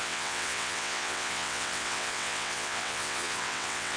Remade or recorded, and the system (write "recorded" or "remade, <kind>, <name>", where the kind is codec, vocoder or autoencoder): remade, vocoder, WaveNeXt